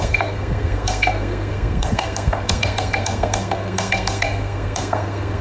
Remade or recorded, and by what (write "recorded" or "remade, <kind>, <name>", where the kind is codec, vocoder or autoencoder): remade, codec, SNAC